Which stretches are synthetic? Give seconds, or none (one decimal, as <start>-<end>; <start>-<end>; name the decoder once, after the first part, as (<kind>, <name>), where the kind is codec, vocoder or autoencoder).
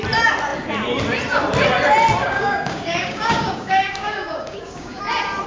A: 2.2-5.0 (codec, DAC)